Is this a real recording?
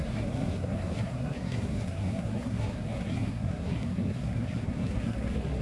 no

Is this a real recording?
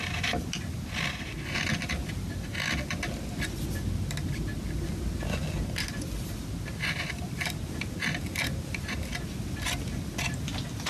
yes